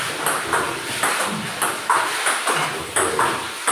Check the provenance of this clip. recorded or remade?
recorded